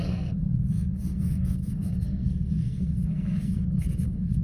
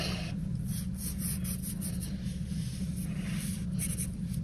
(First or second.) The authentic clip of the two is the second